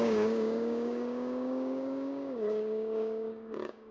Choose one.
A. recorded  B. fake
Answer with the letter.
B